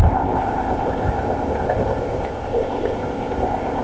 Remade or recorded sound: remade